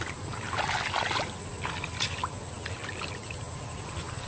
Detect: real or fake real